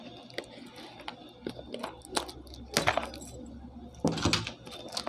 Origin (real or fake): real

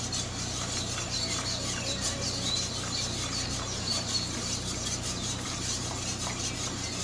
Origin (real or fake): fake